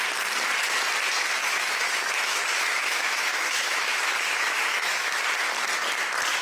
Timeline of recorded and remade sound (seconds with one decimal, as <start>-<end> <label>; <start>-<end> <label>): 0.0-1.4 recorded; 1.4-5.2 remade; 5.2-6.4 recorded